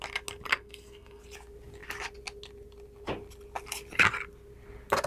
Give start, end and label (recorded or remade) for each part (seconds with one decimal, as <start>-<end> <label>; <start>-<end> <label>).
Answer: 0.0-0.5 recorded; 0.5-1.2 remade; 1.2-5.1 recorded